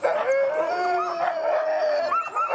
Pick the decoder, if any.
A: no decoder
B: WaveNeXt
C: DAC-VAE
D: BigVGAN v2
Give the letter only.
A